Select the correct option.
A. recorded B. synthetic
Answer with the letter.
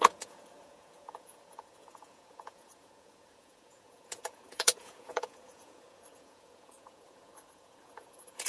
B